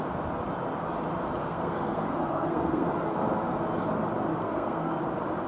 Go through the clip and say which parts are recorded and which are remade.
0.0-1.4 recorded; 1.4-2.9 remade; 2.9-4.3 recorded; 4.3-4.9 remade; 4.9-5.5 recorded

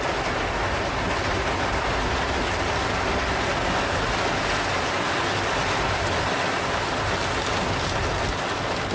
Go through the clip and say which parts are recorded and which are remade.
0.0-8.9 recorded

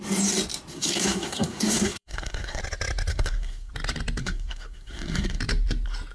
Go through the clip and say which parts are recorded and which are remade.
0.0-0.7 recorded; 0.7-2.6 remade; 2.6-3.1 recorded; 3.1-3.7 remade; 3.7-4.2 recorded; 4.2-5.4 remade; 5.4-6.1 recorded

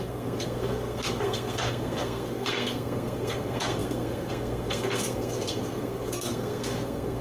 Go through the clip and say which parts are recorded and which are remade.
0.0-7.2 remade